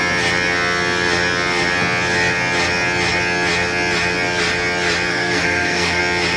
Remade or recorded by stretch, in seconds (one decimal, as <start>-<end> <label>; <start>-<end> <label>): 0.0-5.1 recorded; 5.1-6.0 remade; 6.0-6.4 recorded

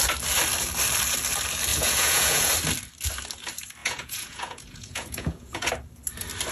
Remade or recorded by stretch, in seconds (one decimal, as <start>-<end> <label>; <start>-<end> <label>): 0.0-1.7 recorded; 1.7-2.5 remade; 2.5-3.8 recorded; 3.8-5.7 remade; 5.7-6.5 recorded

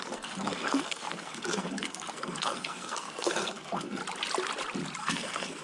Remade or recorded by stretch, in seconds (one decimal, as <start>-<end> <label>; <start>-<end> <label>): 0.0-4.0 remade; 4.0-5.0 recorded; 5.0-5.6 remade

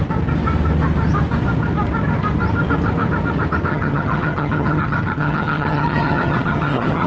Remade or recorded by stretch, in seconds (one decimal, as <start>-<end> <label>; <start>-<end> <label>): 0.0-3.7 recorded; 3.7-7.1 remade

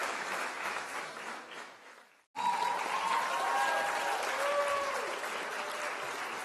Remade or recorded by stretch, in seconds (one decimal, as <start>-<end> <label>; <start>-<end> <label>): 0.0-2.1 remade; 2.1-6.4 recorded